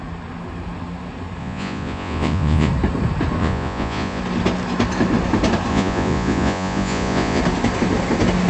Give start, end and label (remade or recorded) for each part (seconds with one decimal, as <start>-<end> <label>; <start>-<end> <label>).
0.0-1.4 recorded; 1.4-2.7 remade; 2.7-3.4 recorded; 3.4-4.2 remade; 4.2-5.7 recorded; 5.7-7.4 remade; 7.4-8.5 recorded